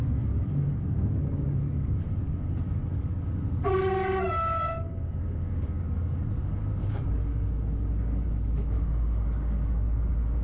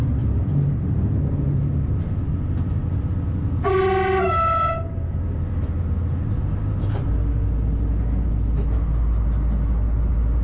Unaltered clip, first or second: second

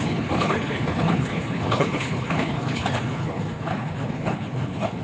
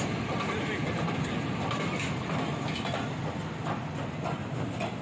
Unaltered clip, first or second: second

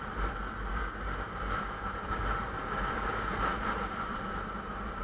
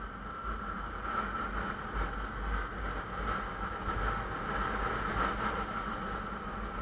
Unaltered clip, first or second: second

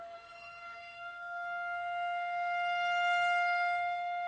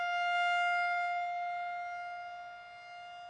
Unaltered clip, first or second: second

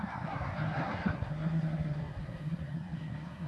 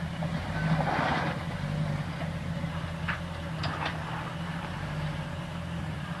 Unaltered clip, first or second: second